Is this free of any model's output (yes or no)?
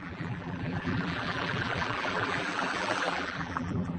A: no